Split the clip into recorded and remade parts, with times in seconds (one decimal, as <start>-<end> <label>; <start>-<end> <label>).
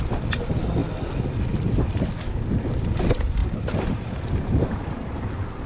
0.0-3.4 recorded; 3.4-4.3 remade; 4.3-5.7 recorded